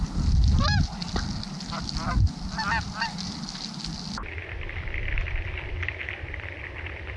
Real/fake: real